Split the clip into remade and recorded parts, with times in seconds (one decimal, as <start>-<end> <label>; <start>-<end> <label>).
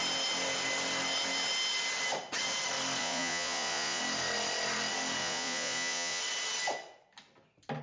0.0-3.0 recorded; 3.0-4.0 remade; 4.0-5.2 recorded; 5.2-6.2 remade; 6.2-7.8 recorded